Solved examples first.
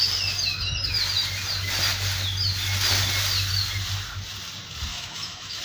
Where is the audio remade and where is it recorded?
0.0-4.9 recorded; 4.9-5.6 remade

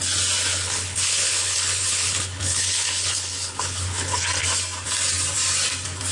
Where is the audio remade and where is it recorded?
0.0-0.5 recorded; 0.5-4.2 remade; 4.2-6.1 recorded